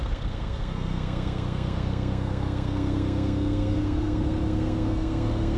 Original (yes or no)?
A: no